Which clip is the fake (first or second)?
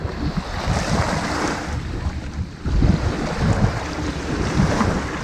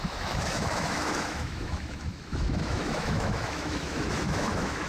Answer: second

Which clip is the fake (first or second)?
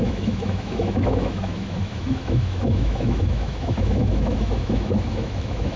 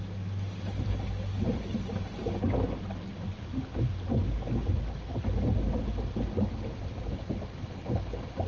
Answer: first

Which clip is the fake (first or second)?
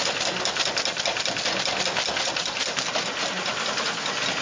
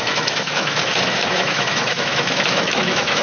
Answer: second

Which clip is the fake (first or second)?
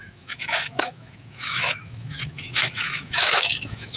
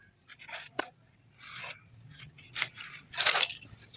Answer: first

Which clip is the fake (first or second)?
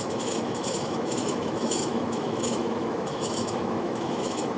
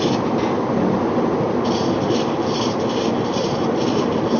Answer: first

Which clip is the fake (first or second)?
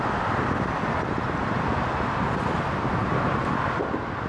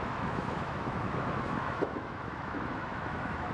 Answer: second